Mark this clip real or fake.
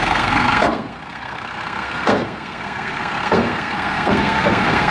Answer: fake